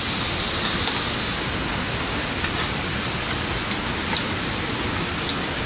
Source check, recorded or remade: recorded